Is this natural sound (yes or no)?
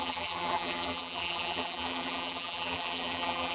no